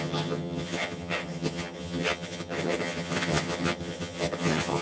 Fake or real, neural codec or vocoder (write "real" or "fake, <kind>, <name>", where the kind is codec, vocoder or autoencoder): fake, vocoder, HiFi-GAN